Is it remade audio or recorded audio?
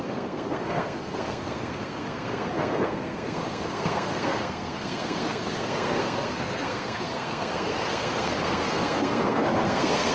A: remade